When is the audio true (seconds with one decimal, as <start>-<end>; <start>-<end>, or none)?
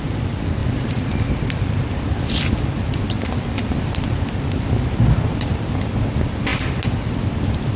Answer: 0.0-7.8